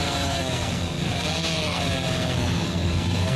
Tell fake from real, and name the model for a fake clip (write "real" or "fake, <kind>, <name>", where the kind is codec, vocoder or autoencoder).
fake, codec, SNAC